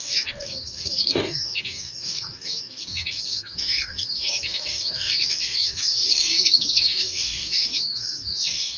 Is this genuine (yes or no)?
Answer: no